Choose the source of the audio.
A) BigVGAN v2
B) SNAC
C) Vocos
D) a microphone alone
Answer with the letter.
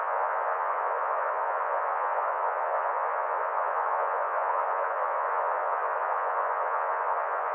C